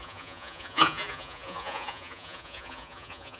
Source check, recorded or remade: remade